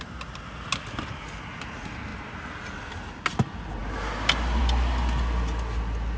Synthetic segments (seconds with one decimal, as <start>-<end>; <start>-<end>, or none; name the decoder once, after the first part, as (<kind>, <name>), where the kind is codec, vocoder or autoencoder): none